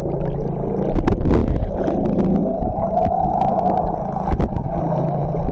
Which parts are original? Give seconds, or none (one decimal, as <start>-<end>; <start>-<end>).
0.0-5.5